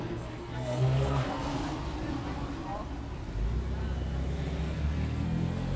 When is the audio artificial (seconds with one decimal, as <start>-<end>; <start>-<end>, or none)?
0.0-1.5; 4.6-5.8